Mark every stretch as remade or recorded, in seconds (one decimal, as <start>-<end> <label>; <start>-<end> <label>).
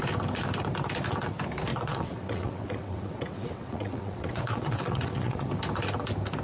0.0-1.7 recorded; 1.7-5.5 remade; 5.5-6.4 recorded